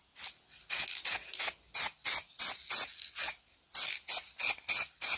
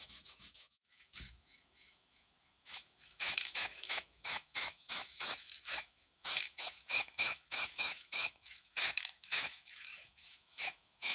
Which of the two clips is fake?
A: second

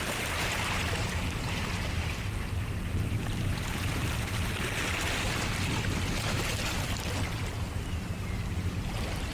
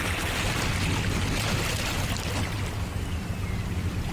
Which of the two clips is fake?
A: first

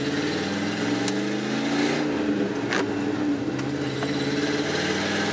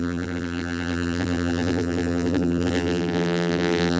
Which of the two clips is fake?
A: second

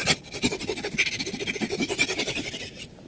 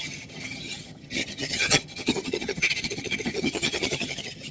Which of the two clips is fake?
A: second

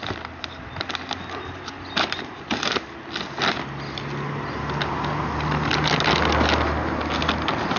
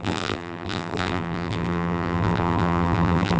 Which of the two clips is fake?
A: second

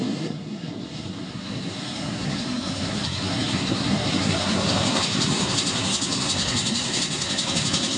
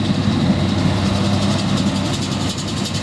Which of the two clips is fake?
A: first